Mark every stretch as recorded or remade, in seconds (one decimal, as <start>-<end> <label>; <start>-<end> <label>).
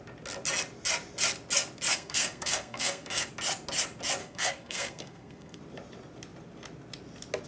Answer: 0.0-1.9 recorded; 1.9-3.3 remade; 3.3-4.2 recorded; 4.2-5.6 remade; 5.6-7.5 recorded